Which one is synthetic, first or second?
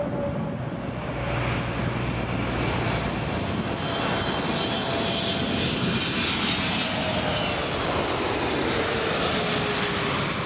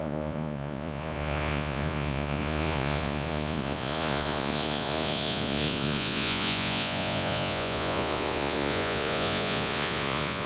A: second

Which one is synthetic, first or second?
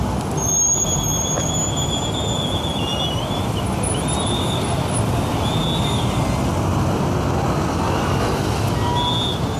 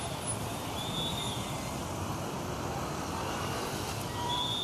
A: second